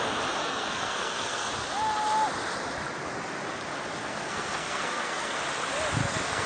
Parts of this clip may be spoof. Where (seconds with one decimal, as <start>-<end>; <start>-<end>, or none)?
0.4-1.5; 4.0-5.4; 6.0-6.5